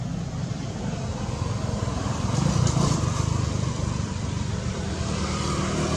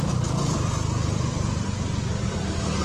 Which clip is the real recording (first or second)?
second